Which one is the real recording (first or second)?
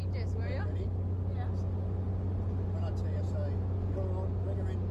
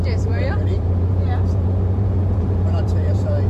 first